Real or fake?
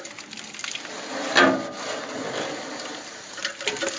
real